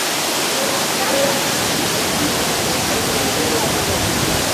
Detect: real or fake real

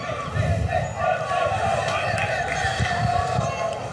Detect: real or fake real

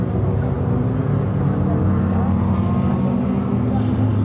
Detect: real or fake real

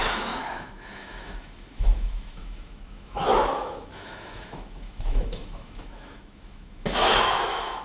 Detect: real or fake fake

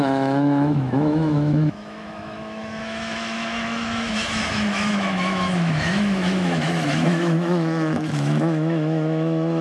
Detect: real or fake fake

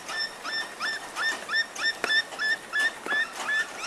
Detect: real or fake real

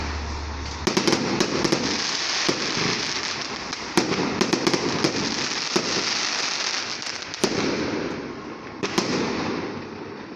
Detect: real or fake real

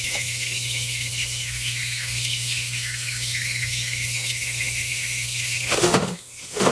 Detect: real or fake fake